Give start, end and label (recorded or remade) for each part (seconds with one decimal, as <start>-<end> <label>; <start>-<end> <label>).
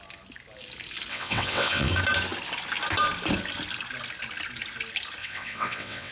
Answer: 0.0-1.1 recorded; 1.1-1.9 remade; 1.9-5.2 recorded; 5.2-6.1 remade